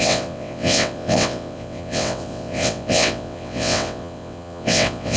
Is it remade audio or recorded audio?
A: remade